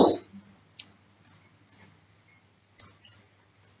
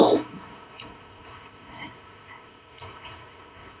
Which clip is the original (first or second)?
first